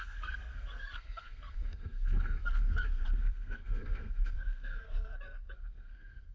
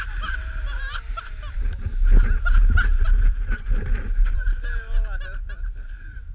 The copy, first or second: first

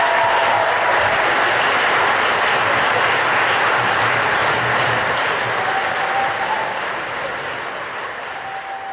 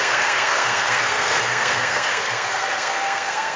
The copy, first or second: second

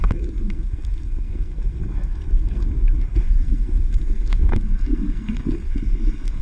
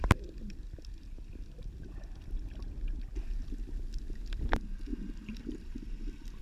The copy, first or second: first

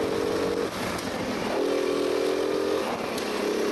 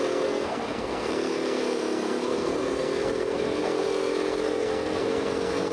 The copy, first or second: second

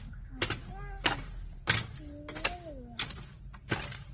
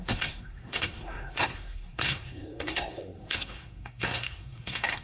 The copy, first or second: second